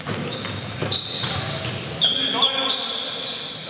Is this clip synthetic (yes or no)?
no